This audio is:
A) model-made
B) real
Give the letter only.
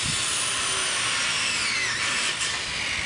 B